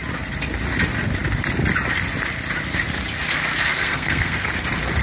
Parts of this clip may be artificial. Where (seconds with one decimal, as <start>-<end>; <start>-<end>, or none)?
3.7-4.5